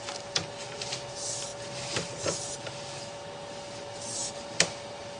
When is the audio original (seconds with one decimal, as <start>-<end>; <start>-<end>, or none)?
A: 1.5-2.2; 4.2-4.7

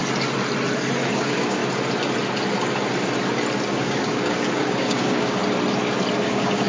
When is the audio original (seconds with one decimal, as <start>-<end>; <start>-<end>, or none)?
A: 0.0-1.1; 1.6-3.7; 5.4-6.2

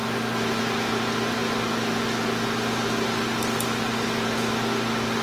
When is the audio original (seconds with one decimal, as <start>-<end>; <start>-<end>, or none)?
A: 0.0-5.2